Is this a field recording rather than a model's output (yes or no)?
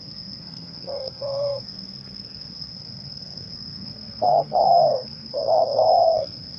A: no